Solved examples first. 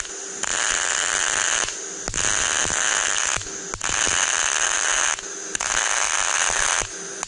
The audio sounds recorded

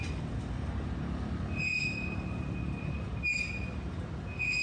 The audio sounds recorded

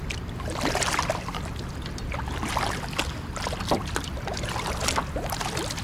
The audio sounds recorded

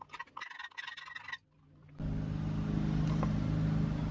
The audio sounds recorded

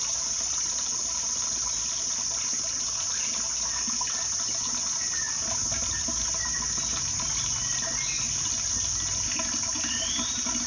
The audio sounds recorded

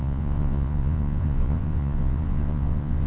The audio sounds remade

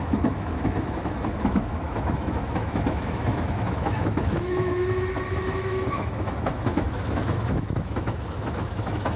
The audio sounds remade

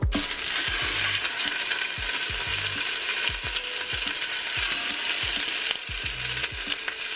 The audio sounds recorded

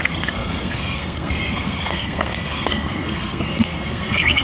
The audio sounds remade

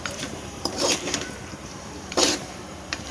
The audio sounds remade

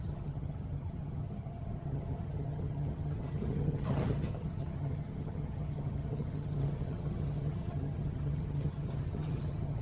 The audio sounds remade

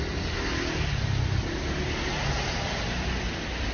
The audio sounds recorded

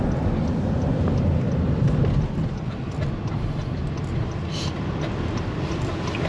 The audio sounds recorded